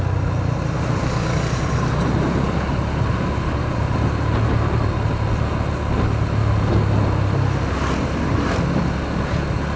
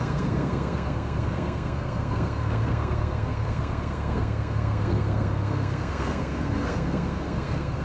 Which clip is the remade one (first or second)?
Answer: second